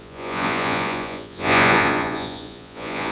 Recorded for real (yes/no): no